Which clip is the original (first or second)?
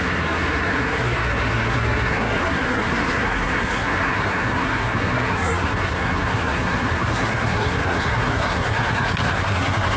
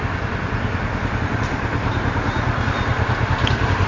second